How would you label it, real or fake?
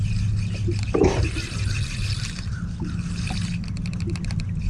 real